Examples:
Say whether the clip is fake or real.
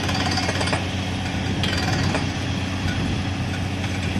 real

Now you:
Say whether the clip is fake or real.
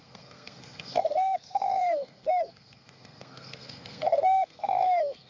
fake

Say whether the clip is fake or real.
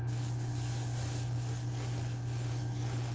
fake